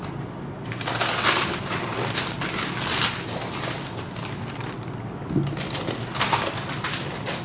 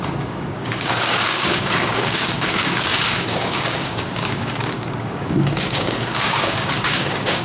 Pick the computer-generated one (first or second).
second